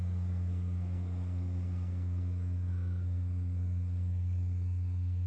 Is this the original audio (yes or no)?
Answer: no